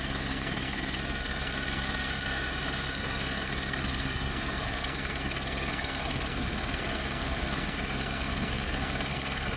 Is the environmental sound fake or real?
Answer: fake